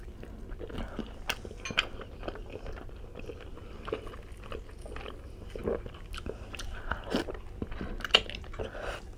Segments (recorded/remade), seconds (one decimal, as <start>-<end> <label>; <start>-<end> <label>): 0.0-9.2 recorded